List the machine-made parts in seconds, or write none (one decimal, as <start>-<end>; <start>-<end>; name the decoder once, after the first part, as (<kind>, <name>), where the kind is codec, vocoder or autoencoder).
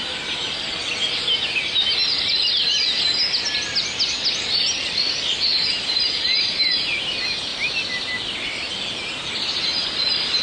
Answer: none